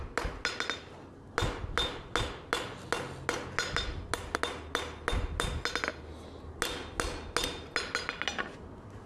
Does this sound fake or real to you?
real